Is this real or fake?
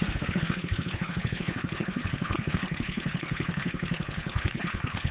fake